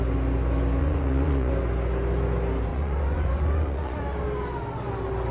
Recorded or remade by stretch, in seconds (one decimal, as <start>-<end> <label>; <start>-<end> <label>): 0.0-0.8 recorded; 0.8-1.5 remade; 1.5-2.7 recorded; 2.7-4.0 remade; 4.0-5.3 recorded